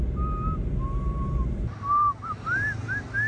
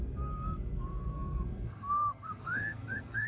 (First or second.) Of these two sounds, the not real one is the second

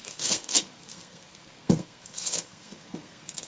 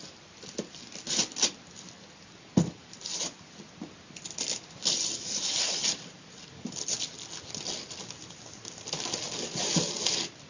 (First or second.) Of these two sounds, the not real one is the first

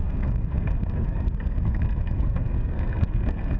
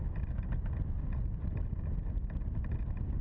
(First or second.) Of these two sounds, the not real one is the first